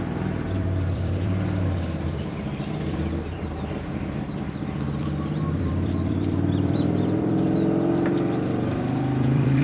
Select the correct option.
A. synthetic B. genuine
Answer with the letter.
A